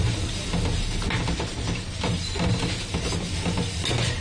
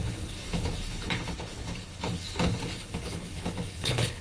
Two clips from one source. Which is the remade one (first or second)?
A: second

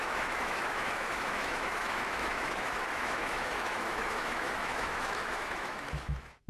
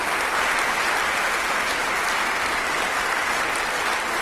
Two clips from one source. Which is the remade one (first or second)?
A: first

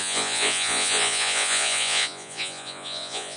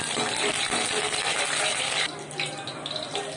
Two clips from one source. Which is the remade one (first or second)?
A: first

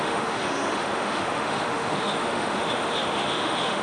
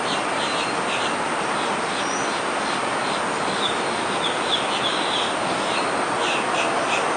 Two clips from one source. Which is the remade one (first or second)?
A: first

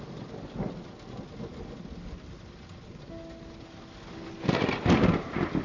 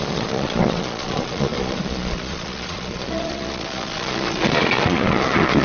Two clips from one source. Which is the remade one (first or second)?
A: second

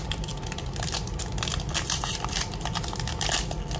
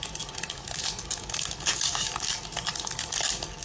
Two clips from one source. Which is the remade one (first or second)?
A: second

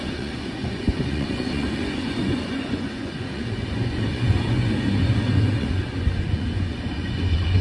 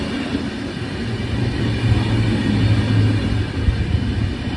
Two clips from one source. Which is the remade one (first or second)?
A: first